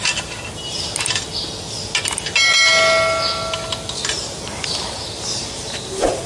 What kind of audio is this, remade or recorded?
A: recorded